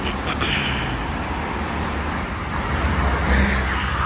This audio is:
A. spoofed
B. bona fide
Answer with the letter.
B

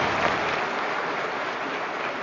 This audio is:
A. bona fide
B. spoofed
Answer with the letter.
A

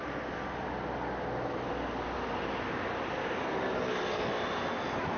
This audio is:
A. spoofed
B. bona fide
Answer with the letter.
B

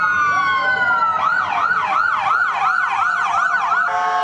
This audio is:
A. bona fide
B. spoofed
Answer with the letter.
A